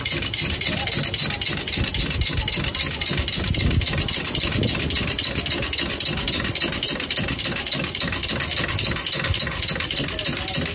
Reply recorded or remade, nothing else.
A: recorded